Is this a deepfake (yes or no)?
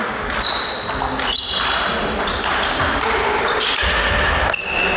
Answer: no